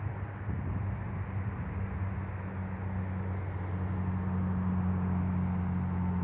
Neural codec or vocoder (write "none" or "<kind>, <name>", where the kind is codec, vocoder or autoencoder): none